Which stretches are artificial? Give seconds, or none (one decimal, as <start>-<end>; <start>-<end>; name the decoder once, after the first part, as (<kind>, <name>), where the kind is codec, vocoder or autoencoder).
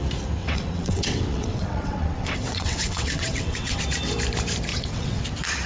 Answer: 0.4-3.8 (vocoder, WaveNeXt); 4.7-5.2